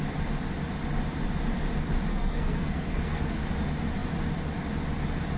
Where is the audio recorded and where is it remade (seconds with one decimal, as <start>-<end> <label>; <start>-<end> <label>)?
0.0-2.1 recorded; 2.1-3.4 remade; 3.4-5.4 recorded